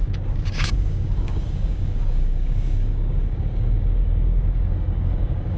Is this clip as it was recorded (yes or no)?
no